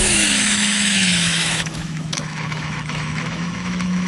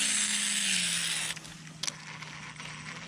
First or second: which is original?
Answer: second